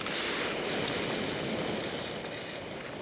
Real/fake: real